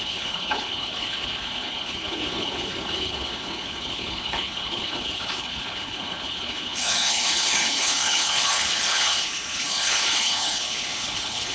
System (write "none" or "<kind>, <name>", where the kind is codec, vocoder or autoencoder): codec, HILCodec